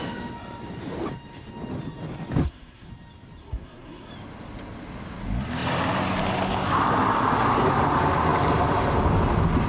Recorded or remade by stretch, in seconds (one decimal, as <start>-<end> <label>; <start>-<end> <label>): 0.0-2.4 recorded; 2.4-2.9 remade; 2.9-3.4 recorded; 3.4-4.1 remade; 4.1-9.7 recorded